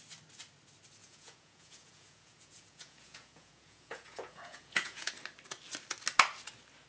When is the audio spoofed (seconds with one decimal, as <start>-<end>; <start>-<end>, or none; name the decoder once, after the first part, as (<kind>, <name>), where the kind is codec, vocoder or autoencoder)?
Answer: 1.0-5.1 (vocoder, Vocos)